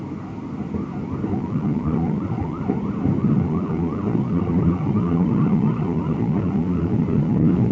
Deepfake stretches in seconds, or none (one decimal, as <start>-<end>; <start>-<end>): 1.3-2.6; 3.2-7.7